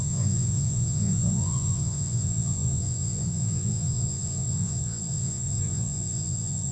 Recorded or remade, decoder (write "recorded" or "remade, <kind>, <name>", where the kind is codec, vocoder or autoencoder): remade, vocoder, Vocos